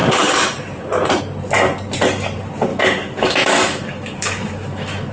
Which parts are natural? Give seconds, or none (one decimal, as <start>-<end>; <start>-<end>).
0.0-2.7